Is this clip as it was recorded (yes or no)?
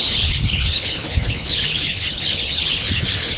no